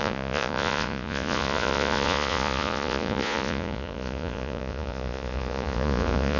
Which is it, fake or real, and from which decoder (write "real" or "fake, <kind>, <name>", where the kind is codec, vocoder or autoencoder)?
fake, vocoder, Vocos